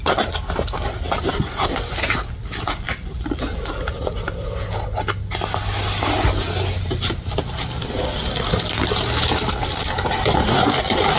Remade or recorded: recorded